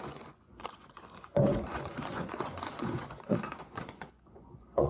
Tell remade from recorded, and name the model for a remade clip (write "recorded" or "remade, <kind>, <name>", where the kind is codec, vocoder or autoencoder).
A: remade, vocoder, Vocos